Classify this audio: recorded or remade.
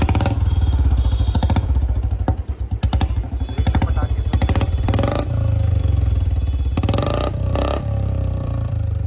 remade